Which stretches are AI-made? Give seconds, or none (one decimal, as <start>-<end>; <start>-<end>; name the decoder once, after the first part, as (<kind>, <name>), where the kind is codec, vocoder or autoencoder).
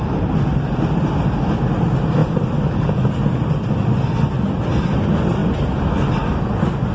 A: none